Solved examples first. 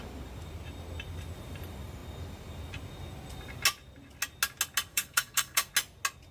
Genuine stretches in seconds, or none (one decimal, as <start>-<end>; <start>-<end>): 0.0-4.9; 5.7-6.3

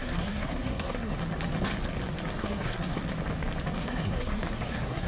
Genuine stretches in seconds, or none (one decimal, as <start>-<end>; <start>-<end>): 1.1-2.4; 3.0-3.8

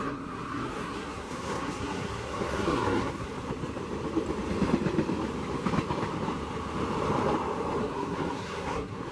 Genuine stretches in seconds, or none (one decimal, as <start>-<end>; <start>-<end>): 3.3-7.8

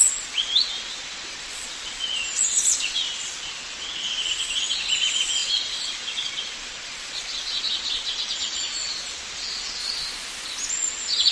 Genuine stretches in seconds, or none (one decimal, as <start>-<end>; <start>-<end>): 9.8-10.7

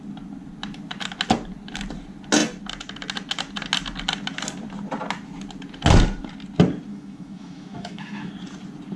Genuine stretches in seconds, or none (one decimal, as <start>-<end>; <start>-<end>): 0.0-6.9; 8.3-9.0